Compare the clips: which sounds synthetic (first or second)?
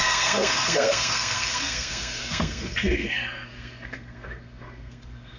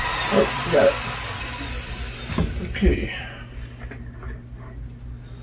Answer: first